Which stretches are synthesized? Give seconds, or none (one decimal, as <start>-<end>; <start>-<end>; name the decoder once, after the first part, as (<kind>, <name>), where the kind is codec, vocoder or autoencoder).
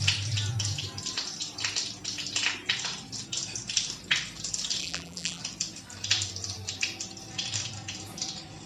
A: 4.8-5.4 (vocoder, BigVGAN v2)